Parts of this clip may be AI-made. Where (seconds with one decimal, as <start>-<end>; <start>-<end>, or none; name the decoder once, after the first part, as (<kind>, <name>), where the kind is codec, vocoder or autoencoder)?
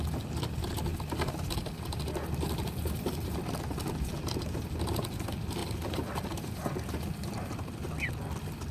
0.9-3.6 (vocoder, BigVGAN v2); 5.6-7.7